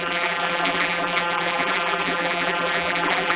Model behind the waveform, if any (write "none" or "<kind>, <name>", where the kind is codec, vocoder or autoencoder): vocoder, BigVGAN v2